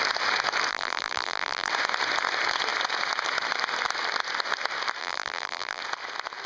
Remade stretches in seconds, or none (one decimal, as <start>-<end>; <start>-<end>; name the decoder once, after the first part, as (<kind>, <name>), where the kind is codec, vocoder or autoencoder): 0.7-1.7 (vocoder, BigVGAN v2); 5.0-5.8

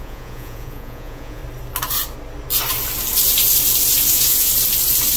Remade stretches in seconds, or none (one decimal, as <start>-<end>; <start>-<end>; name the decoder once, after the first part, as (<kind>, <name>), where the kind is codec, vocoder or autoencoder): 0.0-1.4 (vocoder, Vocos); 4.1-4.5

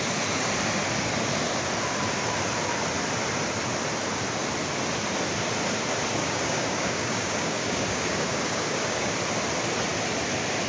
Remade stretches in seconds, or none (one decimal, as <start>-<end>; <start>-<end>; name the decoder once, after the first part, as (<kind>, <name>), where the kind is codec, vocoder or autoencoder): 6.2-9.1 (codec, DAC)

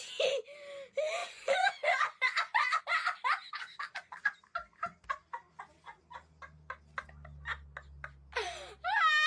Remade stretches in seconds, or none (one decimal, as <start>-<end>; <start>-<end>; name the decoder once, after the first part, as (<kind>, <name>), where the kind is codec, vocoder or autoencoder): 1.2-2.8 (vocoder, Vocos)

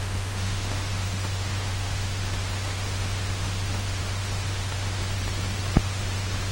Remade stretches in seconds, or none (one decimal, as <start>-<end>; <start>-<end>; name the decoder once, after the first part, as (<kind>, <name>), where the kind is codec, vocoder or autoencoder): 0.0-5.0 (autoencoder, DAC-VAE); 5.8-6.5

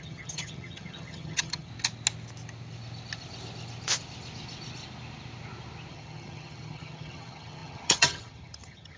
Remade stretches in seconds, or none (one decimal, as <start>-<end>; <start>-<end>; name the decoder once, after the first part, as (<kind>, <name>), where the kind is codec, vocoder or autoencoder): 0.0-1.7 (vocoder, HiFi-GAN); 5.9-9.0